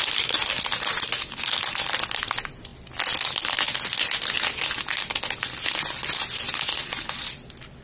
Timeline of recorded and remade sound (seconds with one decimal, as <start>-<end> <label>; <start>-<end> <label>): 0.0-7.8 recorded